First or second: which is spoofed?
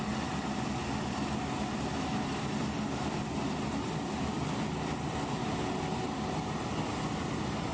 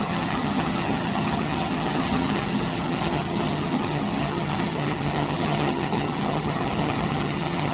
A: second